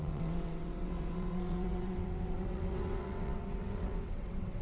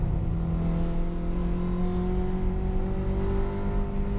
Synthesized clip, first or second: first